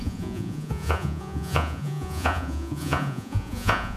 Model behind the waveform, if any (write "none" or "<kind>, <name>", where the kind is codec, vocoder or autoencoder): vocoder, Vocos